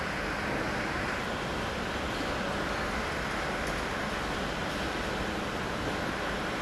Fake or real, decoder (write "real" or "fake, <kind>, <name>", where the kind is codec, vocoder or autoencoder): real